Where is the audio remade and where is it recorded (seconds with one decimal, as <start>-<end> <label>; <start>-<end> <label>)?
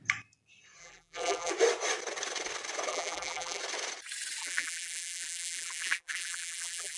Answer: 0.0-0.8 recorded; 0.8-1.5 remade; 1.5-2.9 recorded; 2.9-3.6 remade; 3.6-4.4 recorded; 4.4-7.0 remade